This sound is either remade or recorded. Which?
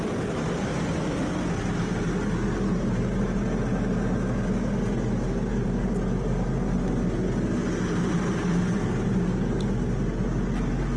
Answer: recorded